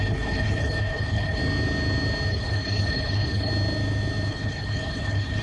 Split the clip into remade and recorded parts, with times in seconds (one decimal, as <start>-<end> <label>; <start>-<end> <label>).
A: 0.0-1.4 remade; 1.4-2.3 recorded; 2.3-3.5 remade; 3.5-4.3 recorded; 4.3-5.4 remade